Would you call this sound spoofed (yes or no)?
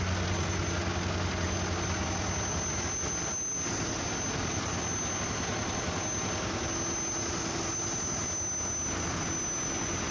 no